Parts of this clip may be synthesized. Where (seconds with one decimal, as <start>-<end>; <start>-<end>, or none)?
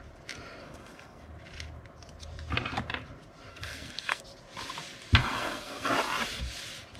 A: 0.6-1.3; 3.5-4.2; 5.2-5.9